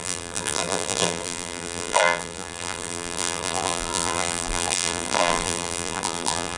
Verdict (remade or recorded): remade